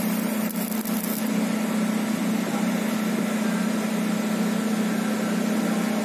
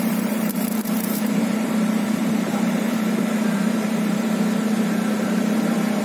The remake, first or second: second